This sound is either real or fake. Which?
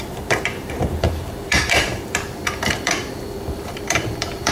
fake